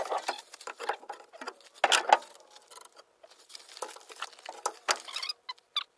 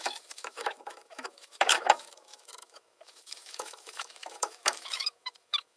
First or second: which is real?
first